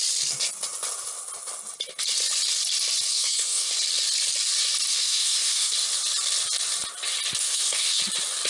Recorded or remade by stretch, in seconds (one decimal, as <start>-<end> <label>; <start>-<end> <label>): 0.0-3.1 recorded; 3.1-3.7 remade; 3.7-4.9 recorded; 4.9-5.7 remade; 5.7-7.4 recorded; 7.4-8.0 remade; 8.0-8.5 recorded